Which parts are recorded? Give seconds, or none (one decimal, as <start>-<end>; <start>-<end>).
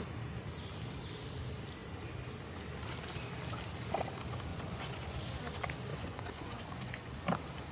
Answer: 0.0-4.5; 5.2-5.9; 7.2-7.7